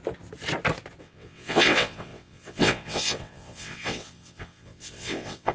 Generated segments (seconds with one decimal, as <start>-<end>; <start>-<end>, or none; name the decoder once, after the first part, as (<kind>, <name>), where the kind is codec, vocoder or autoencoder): 1.0-5.5 (vocoder, WaveNeXt)

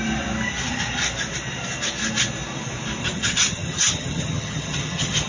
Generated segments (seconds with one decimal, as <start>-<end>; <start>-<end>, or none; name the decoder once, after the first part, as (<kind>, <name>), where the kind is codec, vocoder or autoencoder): 3.0-5.3 (vocoder, HiFi-GAN)

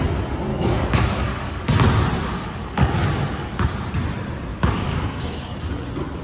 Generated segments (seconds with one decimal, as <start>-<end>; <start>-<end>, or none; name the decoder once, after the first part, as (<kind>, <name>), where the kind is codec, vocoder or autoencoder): 0.5-1.7 (codec, DAC); 2.2-3.1; 4.5-5.6

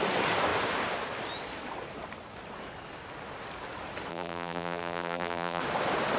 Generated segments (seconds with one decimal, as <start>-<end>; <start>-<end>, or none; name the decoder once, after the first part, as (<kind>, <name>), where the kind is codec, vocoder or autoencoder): 4.1-5.6 (vocoder, BigVGAN v2)

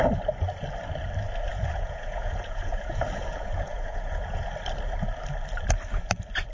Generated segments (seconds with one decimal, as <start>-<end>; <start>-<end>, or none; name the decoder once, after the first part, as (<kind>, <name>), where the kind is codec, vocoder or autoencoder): 1.5-4.5 (vocoder, Vocos)